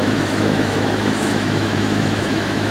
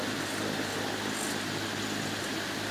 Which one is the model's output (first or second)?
first